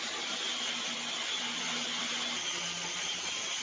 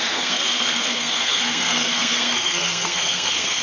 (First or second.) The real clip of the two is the first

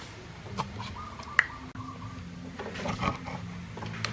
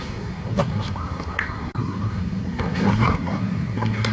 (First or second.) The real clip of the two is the first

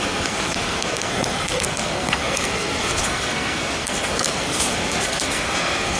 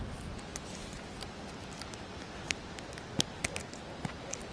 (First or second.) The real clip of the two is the second